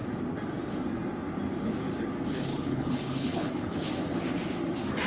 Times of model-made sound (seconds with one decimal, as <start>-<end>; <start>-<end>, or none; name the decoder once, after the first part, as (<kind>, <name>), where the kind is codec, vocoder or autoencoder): 2.5-3.9 (codec, HILCodec)